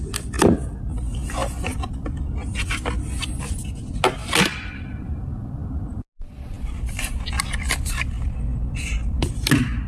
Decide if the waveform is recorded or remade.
recorded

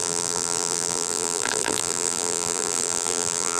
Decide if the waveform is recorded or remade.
remade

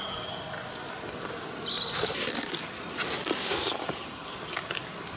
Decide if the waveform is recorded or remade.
recorded